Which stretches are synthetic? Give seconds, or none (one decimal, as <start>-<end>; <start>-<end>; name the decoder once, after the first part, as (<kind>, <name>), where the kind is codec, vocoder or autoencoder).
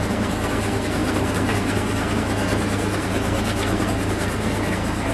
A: 0.0-5.1 (codec, SNAC)